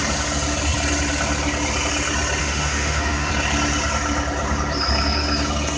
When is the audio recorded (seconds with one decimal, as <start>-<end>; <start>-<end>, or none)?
0.0-2.4; 3.3-5.8